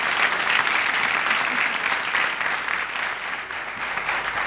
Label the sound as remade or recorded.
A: recorded